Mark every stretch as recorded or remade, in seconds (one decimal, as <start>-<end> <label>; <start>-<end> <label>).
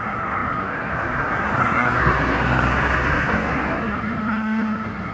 0.0-5.1 remade